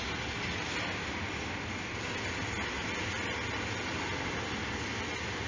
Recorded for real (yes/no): yes